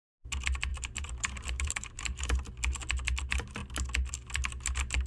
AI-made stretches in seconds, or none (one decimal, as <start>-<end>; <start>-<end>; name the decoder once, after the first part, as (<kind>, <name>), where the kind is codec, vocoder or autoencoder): 0.7-2.5 (vocoder, BigVGAN v2)